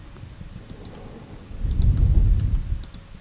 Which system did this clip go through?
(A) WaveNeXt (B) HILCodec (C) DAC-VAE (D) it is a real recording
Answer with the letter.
D